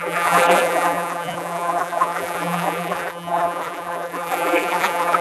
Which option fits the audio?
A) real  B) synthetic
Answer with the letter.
B